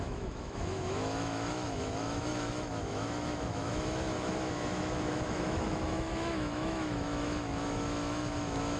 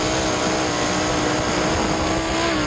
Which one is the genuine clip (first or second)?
second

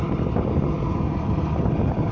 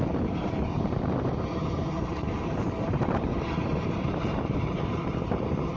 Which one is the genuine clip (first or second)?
first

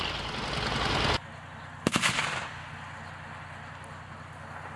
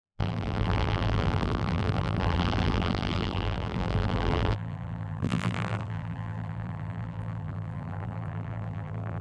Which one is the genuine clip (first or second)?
first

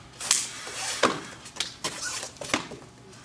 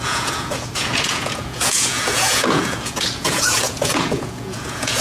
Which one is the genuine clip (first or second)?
first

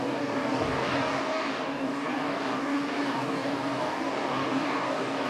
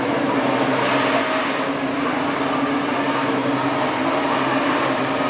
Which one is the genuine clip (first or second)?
second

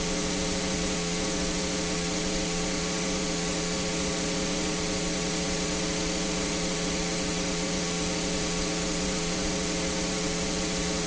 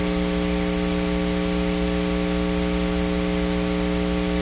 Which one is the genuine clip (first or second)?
second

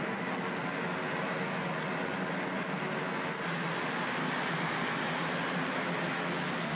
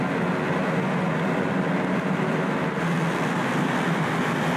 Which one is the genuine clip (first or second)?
first